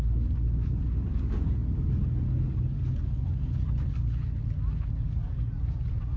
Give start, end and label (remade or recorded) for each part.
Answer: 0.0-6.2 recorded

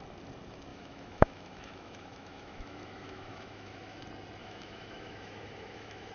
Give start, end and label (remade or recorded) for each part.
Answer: 0.0-0.7 recorded; 0.7-4.0 remade; 4.0-4.4 recorded; 4.4-6.1 remade

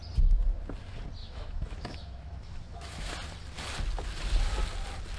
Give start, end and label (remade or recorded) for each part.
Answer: 0.0-1.2 recorded; 1.2-3.1 remade; 3.1-5.2 recorded

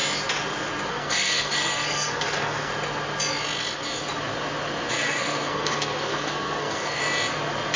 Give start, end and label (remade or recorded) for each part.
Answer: 0.0-0.9 recorded; 0.9-2.7 remade; 2.7-4.9 recorded; 4.9-7.0 remade; 7.0-7.8 recorded

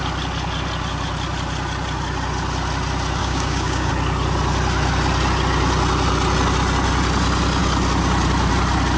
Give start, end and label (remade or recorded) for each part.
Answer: 0.0-3.2 recorded; 3.2-3.9 remade; 3.9-9.0 recorded

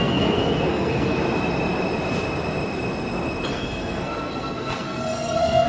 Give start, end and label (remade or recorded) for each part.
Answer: 0.0-1.2 remade; 1.2-3.5 recorded; 3.5-5.7 remade

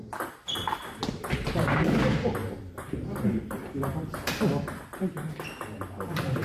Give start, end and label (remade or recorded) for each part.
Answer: 0.0-2.4 recorded; 2.4-4.4 remade; 4.4-6.4 recorded